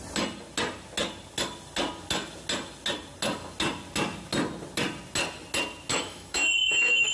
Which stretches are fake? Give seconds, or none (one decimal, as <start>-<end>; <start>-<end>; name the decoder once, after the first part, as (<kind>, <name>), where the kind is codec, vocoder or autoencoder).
5.9-7.1 (autoencoder, DAC-VAE)